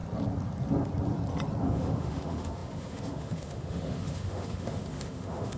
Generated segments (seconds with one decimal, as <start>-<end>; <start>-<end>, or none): 1.6-5.6